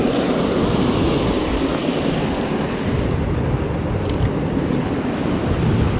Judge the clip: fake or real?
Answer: real